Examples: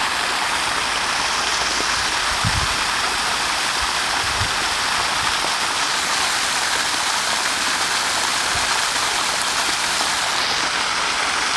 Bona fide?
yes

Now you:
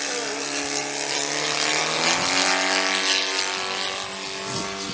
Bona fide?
yes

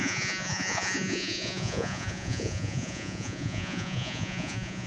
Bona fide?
no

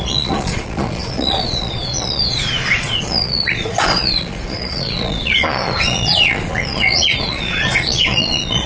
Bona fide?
no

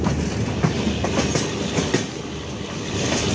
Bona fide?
yes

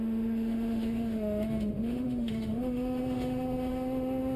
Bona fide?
no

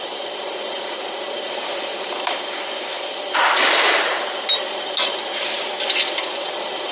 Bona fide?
yes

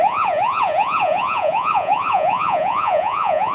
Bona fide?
no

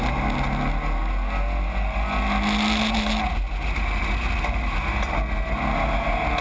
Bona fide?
yes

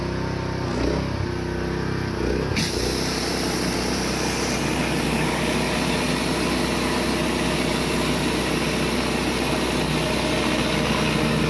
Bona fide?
yes